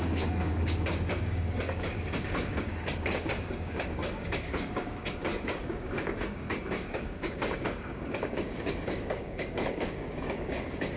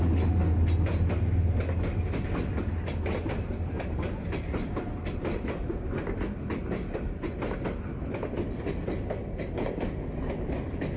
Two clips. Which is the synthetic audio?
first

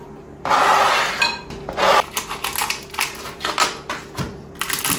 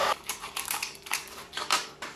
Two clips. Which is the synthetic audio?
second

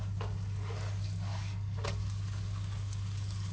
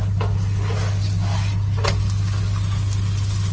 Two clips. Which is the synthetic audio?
first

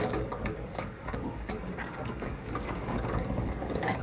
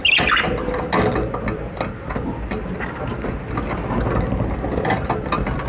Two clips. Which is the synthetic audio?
first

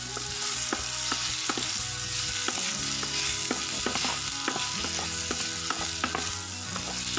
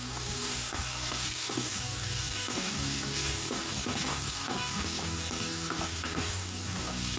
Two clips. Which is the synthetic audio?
second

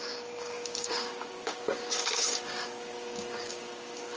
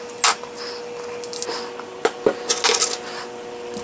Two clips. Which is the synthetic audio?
first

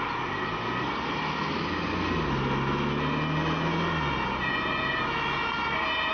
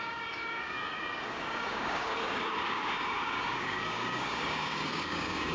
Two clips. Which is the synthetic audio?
second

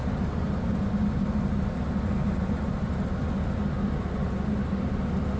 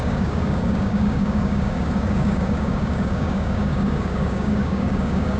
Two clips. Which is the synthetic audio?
second